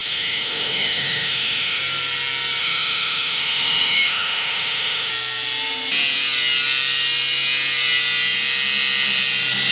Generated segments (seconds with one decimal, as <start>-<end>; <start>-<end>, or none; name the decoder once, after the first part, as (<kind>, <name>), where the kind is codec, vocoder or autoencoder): 0.0-1.8 (autoencoder, DAC-VAE); 2.6-5.1